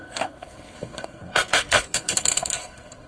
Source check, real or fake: fake